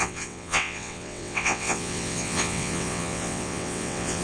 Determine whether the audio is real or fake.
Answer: fake